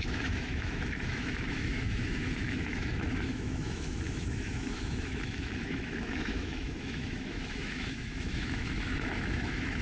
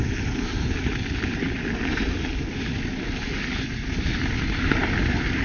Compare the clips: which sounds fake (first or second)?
first